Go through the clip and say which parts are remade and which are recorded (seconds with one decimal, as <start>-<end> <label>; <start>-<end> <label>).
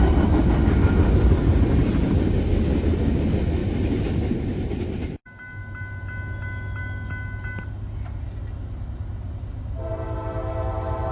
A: 0.0-3.6 recorded; 3.6-4.4 remade; 4.4-9.9 recorded; 9.9-11.1 remade